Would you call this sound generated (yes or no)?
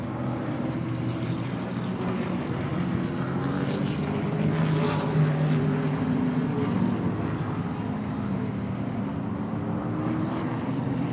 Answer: no